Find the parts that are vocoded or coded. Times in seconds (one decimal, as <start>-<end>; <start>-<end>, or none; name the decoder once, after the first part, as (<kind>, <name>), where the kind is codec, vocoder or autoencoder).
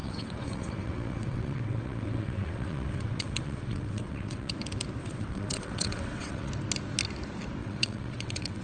0.0-4.5 (vocoder, WaveNeXt); 5.0-6.5; 7.6-8.6